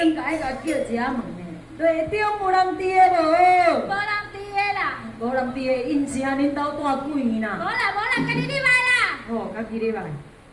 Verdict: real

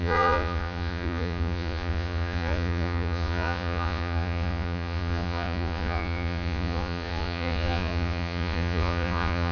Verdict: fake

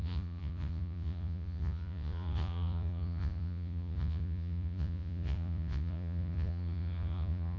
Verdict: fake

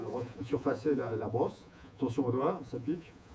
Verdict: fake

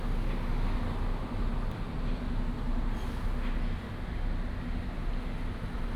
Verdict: real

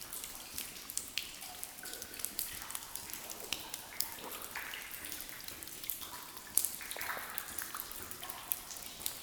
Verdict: real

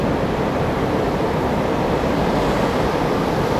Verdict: real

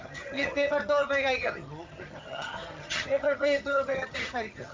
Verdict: fake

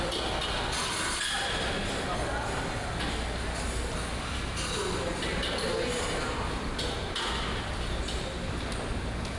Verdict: real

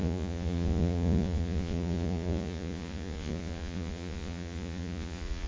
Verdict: fake